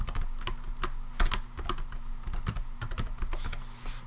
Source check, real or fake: real